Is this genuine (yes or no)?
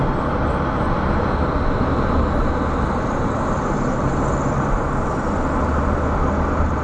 yes